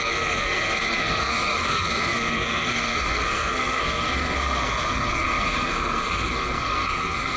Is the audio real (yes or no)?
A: no